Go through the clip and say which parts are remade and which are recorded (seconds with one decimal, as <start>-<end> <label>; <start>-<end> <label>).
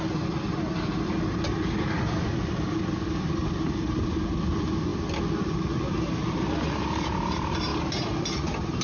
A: 0.0-8.8 recorded